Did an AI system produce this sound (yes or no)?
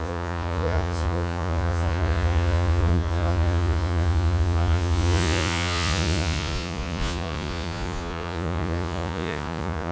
yes